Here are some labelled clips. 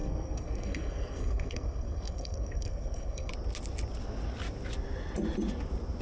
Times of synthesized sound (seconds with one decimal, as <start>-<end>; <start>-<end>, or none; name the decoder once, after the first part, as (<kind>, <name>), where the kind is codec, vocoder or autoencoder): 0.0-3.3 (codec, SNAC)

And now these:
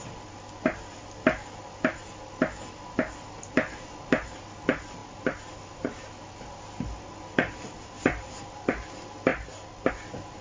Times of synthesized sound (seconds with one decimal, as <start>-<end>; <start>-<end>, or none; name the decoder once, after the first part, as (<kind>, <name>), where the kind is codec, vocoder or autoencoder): 5.0-6.3 (vocoder, BigVGAN v2); 9.3-9.9

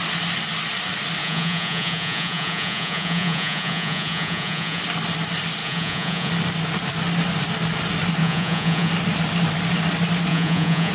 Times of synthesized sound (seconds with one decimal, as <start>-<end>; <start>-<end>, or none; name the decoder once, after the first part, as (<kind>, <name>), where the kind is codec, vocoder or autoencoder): 1.2-4.8 (vocoder, Vocos); 5.6-6.3; 8.2-8.9; 10.3-10.9

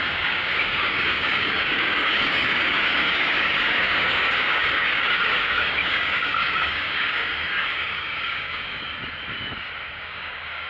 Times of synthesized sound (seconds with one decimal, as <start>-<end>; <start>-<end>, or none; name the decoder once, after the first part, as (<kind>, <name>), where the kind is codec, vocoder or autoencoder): 0.0-8.8 (codec, DAC); 9.9-10.7